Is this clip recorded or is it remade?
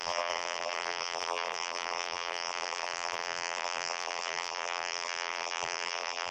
remade